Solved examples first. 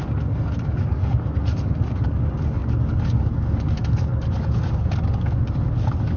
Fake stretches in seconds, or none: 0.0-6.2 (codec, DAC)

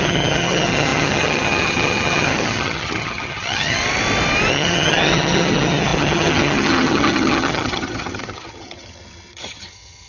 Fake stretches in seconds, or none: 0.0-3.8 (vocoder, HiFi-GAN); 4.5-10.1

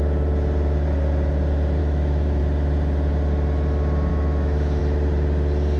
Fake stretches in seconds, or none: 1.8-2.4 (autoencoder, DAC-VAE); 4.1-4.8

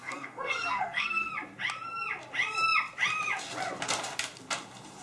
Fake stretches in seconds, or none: 0.0-1.3 (codec, SNAC)

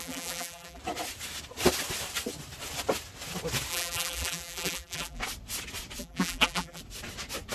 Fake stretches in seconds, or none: 0.0-0.8 (vocoder, BigVGAN v2); 3.7-5.2; 6.0-6.8

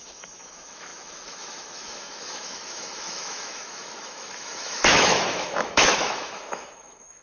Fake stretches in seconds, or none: 0.0-7.2 (autoencoder, DAC-VAE)

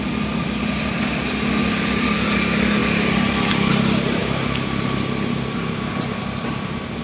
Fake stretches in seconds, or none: none

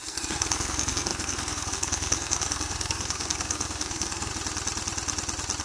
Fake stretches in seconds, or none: 0.0-4.3 (codec, SNAC)